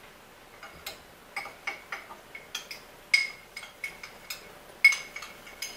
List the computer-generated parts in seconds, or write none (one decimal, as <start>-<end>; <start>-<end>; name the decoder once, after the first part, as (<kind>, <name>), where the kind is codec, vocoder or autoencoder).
3.2-3.9 (vocoder, BigVGAN v2)